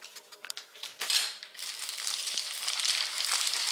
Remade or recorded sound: recorded